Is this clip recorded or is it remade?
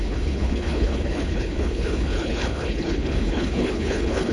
remade